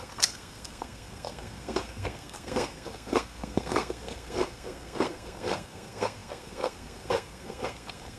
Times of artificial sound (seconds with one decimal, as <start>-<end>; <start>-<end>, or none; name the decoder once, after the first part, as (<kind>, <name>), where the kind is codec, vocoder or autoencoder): 0.0-8.2 (codec, SNAC)